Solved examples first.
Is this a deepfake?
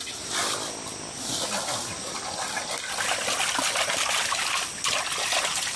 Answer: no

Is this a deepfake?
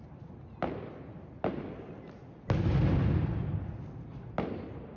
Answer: no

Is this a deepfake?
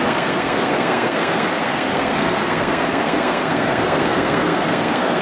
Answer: yes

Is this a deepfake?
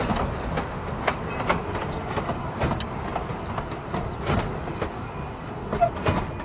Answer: no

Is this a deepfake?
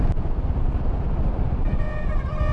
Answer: no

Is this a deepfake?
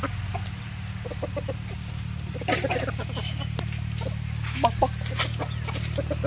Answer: no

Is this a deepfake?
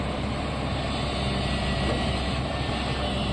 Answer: no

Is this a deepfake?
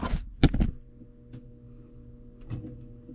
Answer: no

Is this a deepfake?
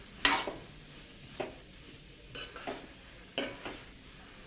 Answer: no